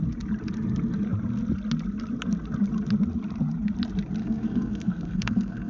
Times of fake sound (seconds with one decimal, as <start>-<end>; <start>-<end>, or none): 4.2-5.7

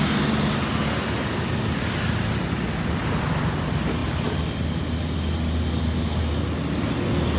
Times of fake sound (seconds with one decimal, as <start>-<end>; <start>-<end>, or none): none

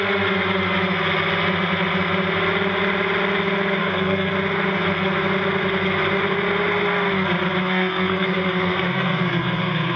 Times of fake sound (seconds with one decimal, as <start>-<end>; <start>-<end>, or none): 3.8-4.3; 7.6-10.0